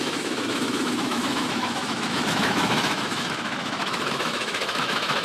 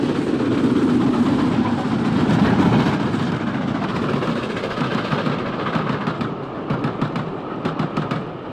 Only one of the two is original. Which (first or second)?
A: second